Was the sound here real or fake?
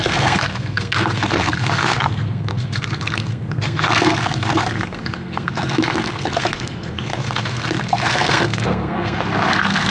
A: fake